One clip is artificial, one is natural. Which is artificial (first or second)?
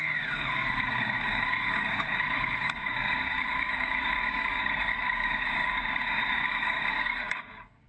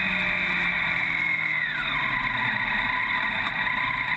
first